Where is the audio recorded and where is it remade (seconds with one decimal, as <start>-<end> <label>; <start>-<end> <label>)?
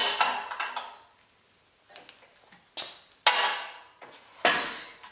0.0-3.5 recorded; 3.5-4.2 remade; 4.2-5.1 recorded